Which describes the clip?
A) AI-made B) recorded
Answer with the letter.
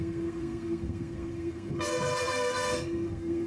A